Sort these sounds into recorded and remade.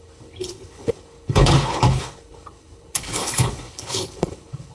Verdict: remade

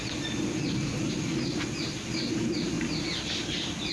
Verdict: recorded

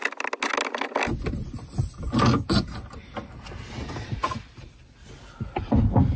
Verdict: recorded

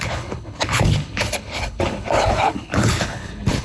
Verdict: remade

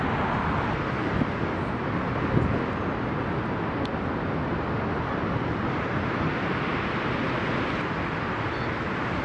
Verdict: recorded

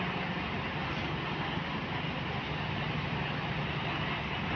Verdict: recorded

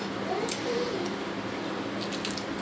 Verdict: recorded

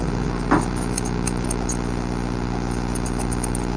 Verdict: recorded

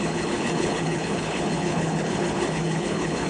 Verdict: remade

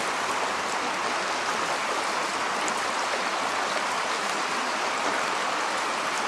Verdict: recorded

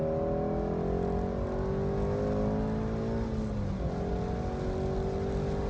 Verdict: recorded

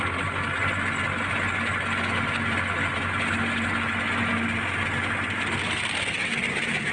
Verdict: recorded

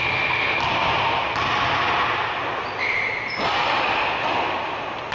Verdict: recorded